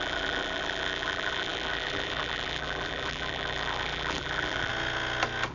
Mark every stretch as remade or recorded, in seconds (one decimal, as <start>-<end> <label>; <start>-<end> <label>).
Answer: 0.0-4.7 remade; 4.7-5.5 recorded